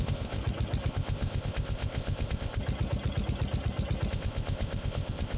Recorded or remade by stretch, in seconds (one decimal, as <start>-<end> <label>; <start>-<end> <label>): 0.0-0.4 remade; 0.4-0.9 recorded; 0.9-2.6 remade; 2.6-4.1 recorded; 4.1-5.4 remade